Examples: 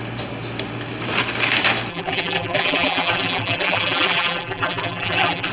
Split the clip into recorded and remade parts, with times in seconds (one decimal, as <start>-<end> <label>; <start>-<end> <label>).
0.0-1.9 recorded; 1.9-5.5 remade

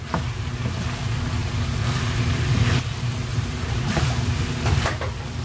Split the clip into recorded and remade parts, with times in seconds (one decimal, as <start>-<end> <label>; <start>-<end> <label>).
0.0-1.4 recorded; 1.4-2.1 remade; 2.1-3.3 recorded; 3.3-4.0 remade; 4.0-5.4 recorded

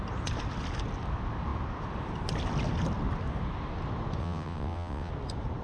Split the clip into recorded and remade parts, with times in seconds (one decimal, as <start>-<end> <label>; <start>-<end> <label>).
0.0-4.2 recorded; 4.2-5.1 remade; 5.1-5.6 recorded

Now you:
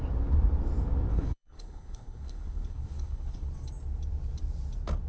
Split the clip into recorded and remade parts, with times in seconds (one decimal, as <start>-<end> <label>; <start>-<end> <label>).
0.0-1.1 recorded; 1.1-3.5 remade; 3.5-5.1 recorded

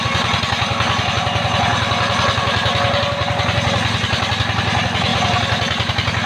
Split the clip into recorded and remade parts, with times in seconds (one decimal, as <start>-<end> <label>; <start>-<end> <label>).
0.0-6.3 recorded

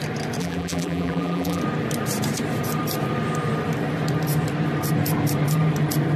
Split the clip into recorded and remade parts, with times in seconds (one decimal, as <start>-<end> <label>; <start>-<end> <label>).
0.0-0.4 recorded; 0.4-1.6 remade; 1.6-6.2 recorded

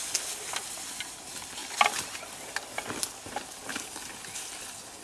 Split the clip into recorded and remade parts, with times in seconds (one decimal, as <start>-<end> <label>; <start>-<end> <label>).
0.0-5.0 recorded

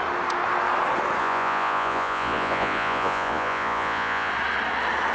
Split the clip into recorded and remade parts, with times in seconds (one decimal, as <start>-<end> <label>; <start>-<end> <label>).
0.0-1.2 recorded; 1.2-4.3 remade; 4.3-5.1 recorded